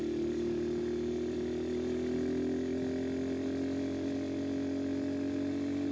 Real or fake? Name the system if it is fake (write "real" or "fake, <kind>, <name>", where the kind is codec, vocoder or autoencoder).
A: real